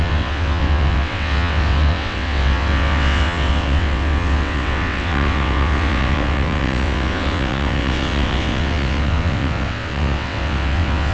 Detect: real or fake fake